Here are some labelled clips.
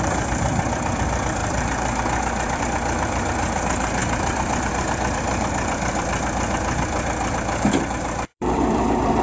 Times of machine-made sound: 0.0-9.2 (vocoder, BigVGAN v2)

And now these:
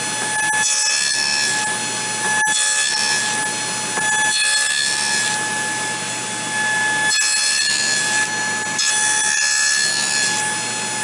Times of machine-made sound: none

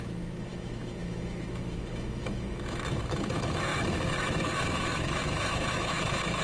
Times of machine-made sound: 0.0-6.4 (autoencoder, DAC-VAE)

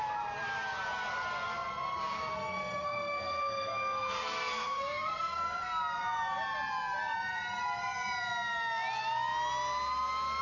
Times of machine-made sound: 2.3-5.8 (codec, SNAC)

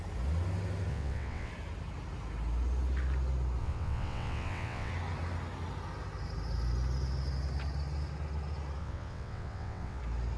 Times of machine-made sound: 0.9-1.5 (vocoder, WaveNeXt); 3.6-4.9; 8.8-10.0

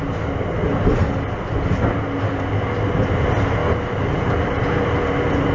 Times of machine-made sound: none

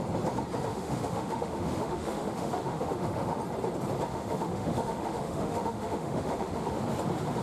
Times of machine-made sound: 0.7-3.4 (autoencoder, DAC-VAE); 4.1-6.8